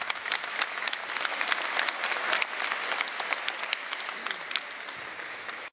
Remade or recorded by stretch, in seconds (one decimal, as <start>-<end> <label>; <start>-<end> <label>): 0.0-1.0 remade; 1.0-3.7 recorded; 3.7-4.2 remade; 4.2-5.2 recorded; 5.2-5.7 remade